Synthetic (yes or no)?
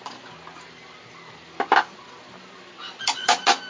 no